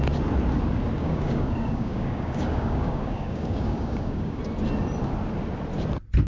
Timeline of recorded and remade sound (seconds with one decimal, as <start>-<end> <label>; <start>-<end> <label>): 0.0-1.0 recorded; 1.0-4.4 remade; 4.4-6.3 recorded